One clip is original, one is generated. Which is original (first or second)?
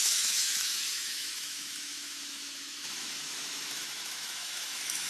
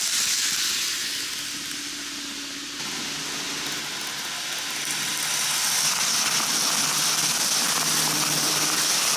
second